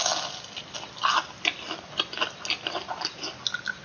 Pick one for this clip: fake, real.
real